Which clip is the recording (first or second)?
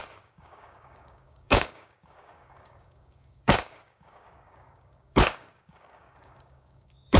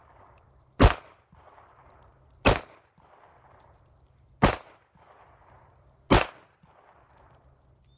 second